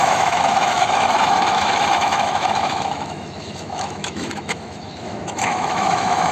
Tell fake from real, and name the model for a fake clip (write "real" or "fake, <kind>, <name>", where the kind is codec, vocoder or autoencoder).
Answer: fake, autoencoder, DAC-VAE